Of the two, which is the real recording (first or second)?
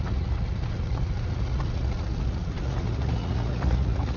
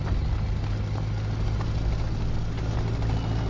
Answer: second